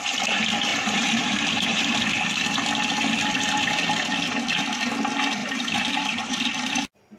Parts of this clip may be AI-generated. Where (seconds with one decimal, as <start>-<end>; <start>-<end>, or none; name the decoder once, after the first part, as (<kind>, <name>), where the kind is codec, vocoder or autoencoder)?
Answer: 0.7-1.8 (vocoder, BigVGAN v2); 5.4-6.8